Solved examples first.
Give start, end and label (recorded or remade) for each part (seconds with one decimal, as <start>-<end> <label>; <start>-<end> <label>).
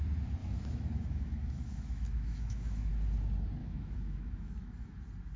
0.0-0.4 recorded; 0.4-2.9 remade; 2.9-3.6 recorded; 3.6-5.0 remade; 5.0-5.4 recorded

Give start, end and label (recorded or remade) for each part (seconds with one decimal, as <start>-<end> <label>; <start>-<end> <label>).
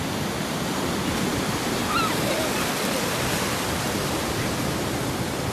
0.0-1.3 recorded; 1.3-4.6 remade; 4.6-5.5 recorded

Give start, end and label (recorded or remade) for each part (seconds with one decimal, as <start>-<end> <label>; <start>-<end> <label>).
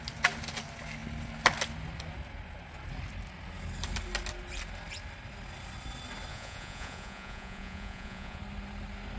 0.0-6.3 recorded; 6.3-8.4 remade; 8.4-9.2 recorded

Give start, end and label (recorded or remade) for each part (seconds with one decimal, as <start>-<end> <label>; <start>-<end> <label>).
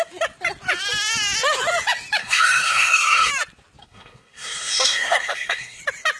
0.0-2.2 recorded; 2.2-3.3 remade; 3.3-3.8 recorded; 3.8-5.8 remade; 5.8-6.2 recorded